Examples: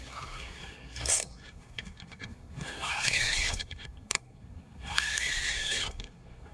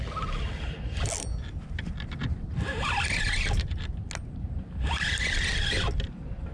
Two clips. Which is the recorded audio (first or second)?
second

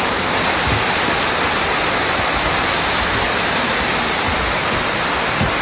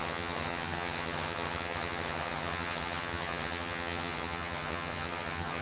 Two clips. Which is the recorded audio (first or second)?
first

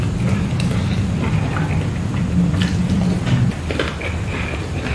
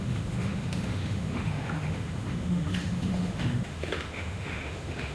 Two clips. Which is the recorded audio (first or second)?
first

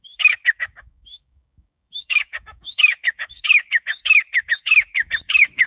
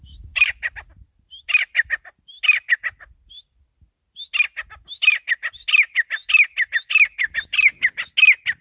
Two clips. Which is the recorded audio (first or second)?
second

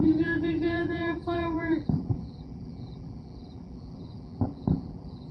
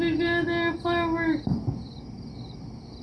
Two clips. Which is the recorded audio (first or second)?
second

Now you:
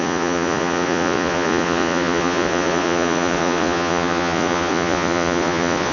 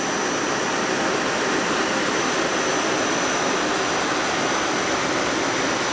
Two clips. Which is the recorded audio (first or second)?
second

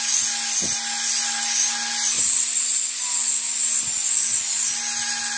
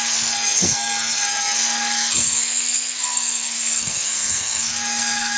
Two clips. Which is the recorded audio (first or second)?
first